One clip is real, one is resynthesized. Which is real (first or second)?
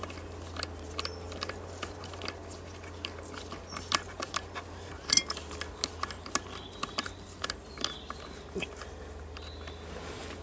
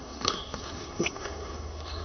first